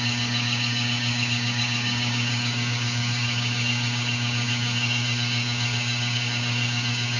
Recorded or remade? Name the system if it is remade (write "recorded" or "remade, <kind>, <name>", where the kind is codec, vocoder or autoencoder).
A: remade, codec, DAC